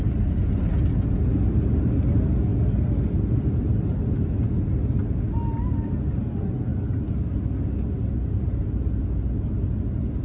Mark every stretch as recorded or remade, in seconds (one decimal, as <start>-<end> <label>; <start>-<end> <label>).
0.0-10.2 recorded